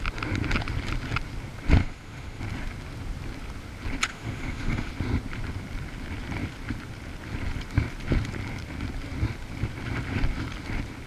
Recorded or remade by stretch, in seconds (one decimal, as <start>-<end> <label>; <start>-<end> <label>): 0.0-1.8 recorded; 1.8-2.4 remade; 2.4-4.1 recorded; 4.1-4.9 remade; 4.9-11.1 recorded